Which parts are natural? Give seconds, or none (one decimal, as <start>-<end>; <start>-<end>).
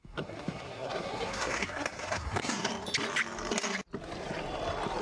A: 2.7-5.0